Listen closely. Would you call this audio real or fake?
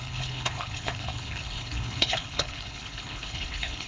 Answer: fake